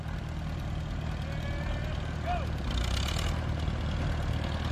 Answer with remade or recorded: recorded